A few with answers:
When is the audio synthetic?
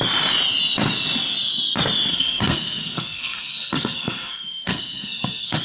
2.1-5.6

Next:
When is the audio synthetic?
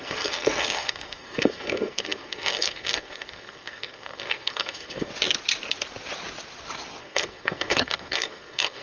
0.0-5.1; 7.0-8.8